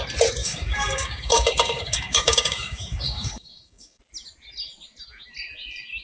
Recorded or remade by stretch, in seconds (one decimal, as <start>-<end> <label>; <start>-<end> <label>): 0.0-0.4 recorded; 0.4-4.0 remade; 4.0-6.0 recorded